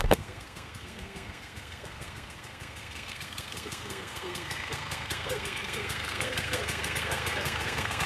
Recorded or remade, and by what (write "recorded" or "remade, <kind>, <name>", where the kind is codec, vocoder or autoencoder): remade, codec, SNAC